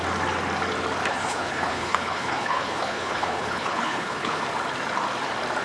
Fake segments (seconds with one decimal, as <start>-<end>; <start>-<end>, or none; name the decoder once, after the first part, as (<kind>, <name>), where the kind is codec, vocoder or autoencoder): 1.1-4.4 (codec, HILCodec)